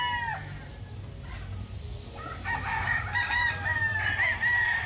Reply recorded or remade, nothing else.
recorded